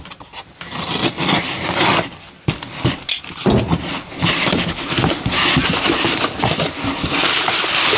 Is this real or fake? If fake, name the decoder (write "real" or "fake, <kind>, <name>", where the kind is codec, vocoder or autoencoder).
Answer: real